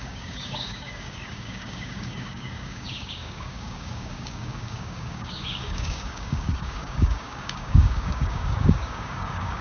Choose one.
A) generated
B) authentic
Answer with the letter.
A